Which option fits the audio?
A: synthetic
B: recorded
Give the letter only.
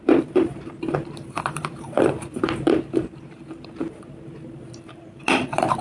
A